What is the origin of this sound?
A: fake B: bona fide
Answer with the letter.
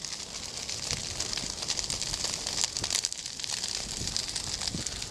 B